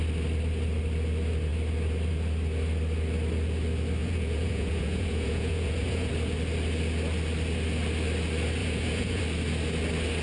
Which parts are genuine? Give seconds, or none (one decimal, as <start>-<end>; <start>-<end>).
0.0-4.0; 6.1-8.6; 9.2-10.2